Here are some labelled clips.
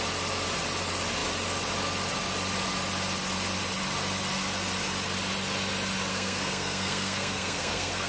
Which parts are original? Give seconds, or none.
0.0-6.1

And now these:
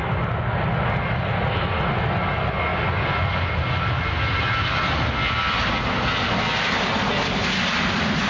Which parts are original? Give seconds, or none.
0.0-8.3

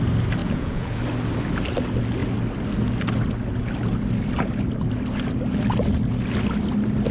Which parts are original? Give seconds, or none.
0.0-0.4; 1.0-7.1

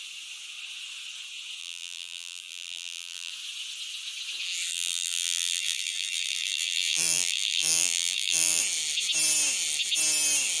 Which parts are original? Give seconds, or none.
0.0-1.6; 3.3-4.7; 8.6-10.6

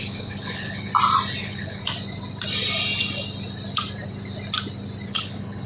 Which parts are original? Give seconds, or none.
0.9-1.4; 1.8-5.1

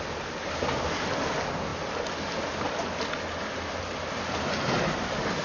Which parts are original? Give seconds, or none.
0.0-5.4

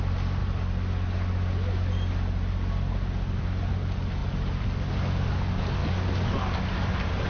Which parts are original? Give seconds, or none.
0.0-7.3

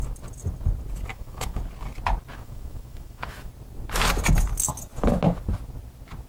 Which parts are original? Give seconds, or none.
0.0-1.1; 1.6-2.3; 3.5-6.3